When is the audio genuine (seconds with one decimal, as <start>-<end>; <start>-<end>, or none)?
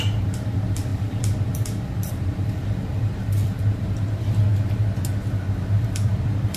4.5-5.7